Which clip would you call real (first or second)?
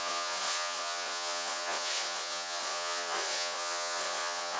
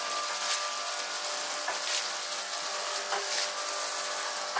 second